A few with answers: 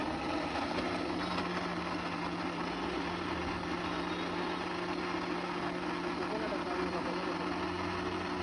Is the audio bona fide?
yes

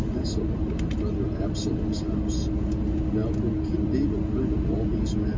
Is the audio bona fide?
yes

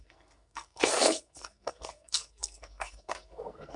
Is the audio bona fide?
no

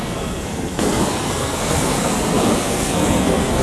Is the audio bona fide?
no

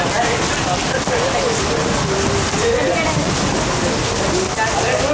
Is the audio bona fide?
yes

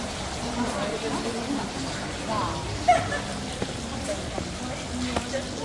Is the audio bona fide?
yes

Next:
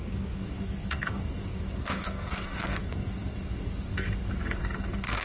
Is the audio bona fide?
no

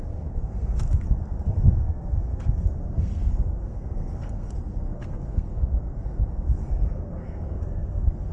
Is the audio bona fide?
no